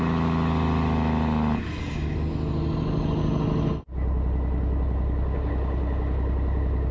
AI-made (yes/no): no